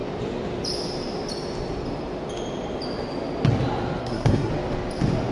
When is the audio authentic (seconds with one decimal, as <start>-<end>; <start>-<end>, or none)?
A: 0.0-4.0; 4.5-5.3